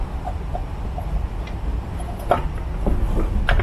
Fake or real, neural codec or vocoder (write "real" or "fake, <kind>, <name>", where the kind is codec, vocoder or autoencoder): real